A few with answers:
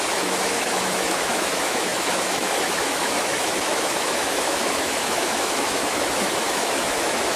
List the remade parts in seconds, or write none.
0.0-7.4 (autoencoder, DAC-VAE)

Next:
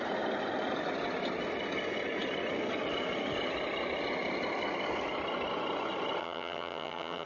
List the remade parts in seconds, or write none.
6.2-7.3 (vocoder, HiFi-GAN)

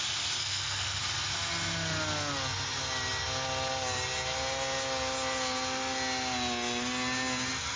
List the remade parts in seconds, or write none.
0.4-1.0 (codec, SNAC)

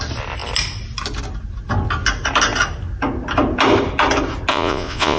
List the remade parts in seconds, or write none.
4.5-5.2 (vocoder, Vocos)

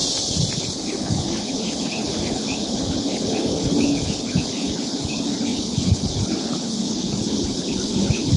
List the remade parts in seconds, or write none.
0.6-8.4 (codec, HILCodec)

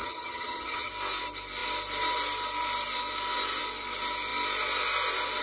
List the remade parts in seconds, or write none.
0.0-0.9 (vocoder, HiFi-GAN)